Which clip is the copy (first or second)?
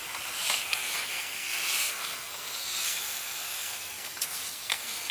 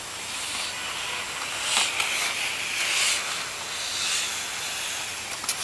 first